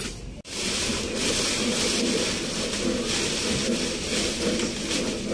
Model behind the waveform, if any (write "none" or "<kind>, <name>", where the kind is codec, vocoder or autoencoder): none